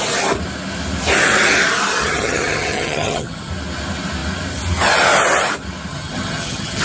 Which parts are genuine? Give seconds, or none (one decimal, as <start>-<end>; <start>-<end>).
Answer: 0.0-2.0; 3.5-5.9